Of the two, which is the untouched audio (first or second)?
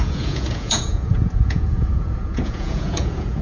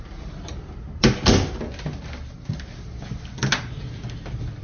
second